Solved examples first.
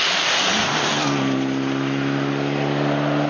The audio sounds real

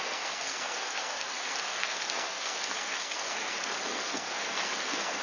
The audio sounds fake